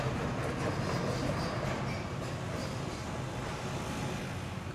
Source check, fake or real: real